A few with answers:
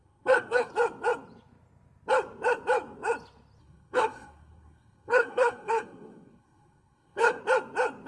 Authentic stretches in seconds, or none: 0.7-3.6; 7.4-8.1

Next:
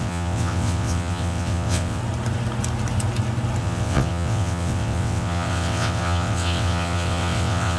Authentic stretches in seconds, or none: 2.0-3.6

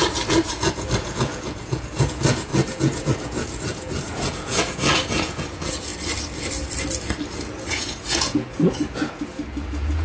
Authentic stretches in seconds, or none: 5.9-7.7

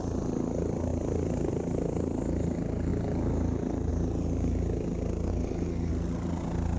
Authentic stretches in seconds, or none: 0.0-5.3; 5.9-6.8

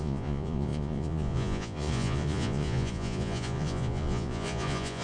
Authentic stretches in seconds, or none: none

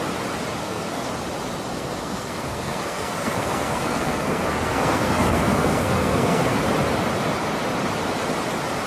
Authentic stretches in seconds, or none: 0.0-0.6; 1.1-1.7; 6.6-8.9

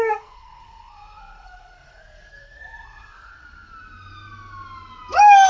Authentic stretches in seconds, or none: 3.3-5.5

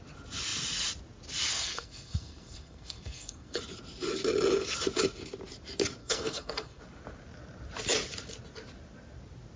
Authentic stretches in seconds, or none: 0.0-1.5; 3.6-6.0; 6.8-9.6